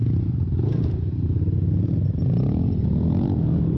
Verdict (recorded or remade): recorded